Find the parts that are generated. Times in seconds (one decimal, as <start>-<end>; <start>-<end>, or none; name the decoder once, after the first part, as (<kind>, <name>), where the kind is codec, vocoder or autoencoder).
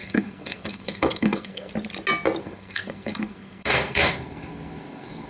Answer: 0.0-1.7 (codec, SNAC); 2.4-5.3